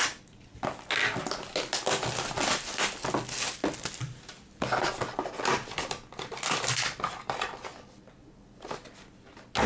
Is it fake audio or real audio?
real